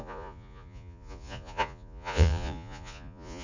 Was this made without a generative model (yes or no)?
no